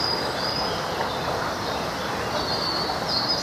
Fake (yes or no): no